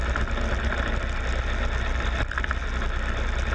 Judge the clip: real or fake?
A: real